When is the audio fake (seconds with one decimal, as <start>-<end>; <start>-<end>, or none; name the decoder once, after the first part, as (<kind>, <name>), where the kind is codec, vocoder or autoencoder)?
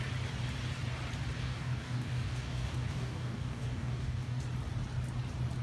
1.4-4.4 (codec, DAC)